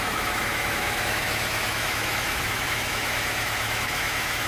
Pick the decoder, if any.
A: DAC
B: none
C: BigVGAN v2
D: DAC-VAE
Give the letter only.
D